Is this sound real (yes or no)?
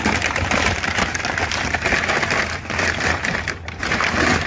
no